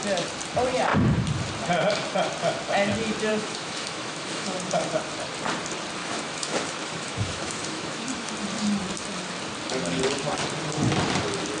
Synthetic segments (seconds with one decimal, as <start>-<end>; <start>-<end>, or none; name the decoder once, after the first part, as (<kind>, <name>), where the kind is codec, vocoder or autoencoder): 3.3-4.9 (autoencoder, DAC-VAE); 6.0-8.3

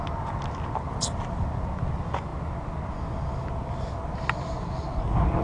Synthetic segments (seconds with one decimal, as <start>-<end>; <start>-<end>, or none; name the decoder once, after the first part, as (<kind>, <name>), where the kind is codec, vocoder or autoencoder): none